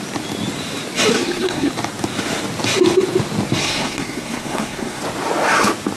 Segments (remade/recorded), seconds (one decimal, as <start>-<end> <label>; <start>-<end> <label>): 0.0-1.1 recorded; 1.1-1.7 remade; 1.7-3.6 recorded; 3.6-5.0 remade; 5.0-6.0 recorded